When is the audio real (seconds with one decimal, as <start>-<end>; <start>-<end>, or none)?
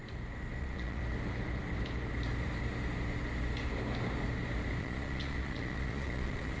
0.0-0.6; 1.0-4.8